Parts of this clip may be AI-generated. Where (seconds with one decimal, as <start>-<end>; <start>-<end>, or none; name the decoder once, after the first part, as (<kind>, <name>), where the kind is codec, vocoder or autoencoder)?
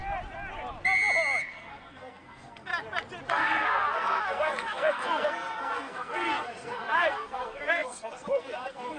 1.4-2.7 (codec, SNAC); 3.3-9.0